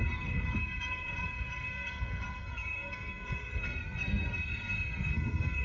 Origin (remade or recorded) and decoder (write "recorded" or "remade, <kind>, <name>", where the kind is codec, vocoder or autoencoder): remade, codec, SNAC